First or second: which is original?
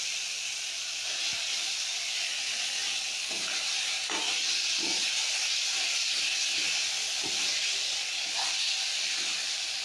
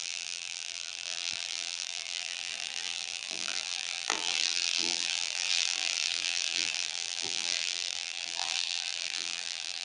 first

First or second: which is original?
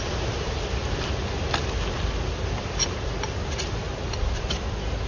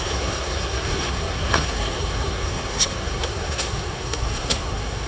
first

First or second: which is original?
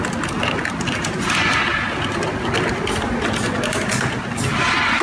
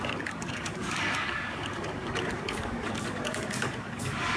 first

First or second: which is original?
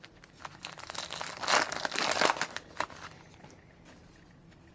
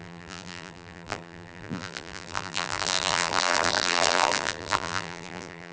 first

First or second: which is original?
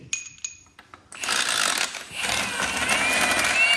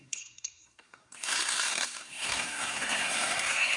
first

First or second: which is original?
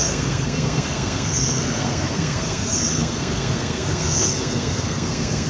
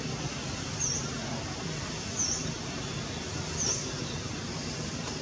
second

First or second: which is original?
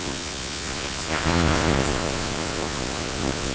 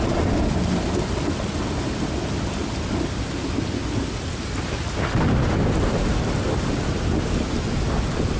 second